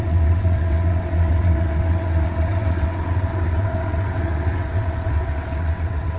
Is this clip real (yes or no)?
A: no